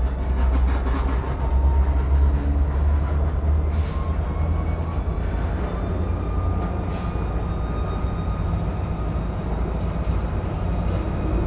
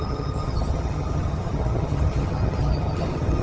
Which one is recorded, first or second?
first